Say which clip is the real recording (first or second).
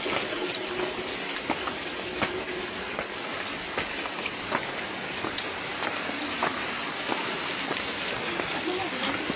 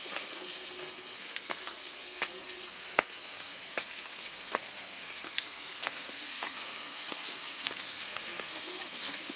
first